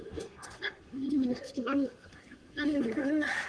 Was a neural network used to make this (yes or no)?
yes